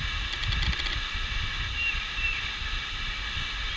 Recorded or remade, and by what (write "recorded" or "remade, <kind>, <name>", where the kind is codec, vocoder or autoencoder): recorded